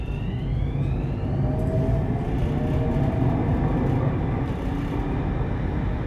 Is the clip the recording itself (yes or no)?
yes